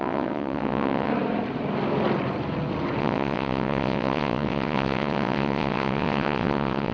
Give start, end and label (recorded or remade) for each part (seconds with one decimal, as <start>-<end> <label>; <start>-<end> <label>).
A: 0.0-1.1 remade; 1.1-3.0 recorded; 3.0-6.9 remade